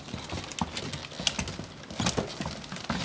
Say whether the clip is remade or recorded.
recorded